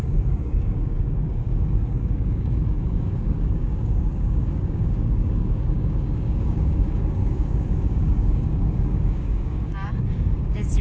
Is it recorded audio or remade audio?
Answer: remade